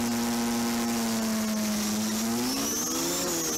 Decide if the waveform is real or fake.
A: real